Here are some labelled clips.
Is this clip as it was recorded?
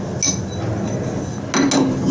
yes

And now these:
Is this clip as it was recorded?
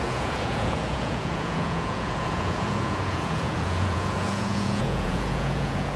no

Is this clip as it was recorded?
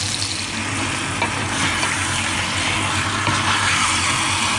yes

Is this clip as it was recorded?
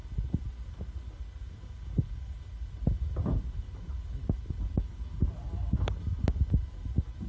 yes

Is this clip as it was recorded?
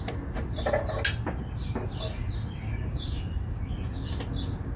yes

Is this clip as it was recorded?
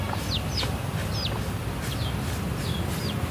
yes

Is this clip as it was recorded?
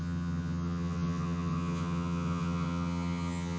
no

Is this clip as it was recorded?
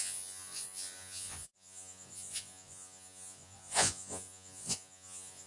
no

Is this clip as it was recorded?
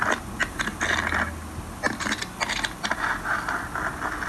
yes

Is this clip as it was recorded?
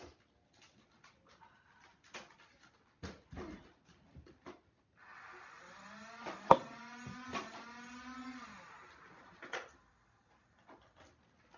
yes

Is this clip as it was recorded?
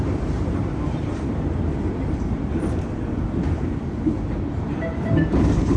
no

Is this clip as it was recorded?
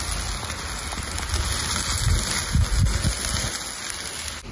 yes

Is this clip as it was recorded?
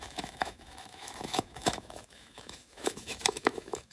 no